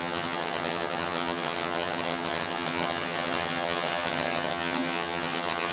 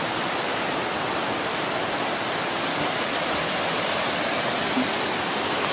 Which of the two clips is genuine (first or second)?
second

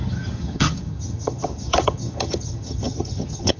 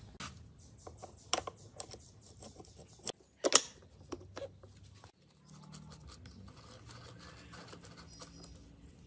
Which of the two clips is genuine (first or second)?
second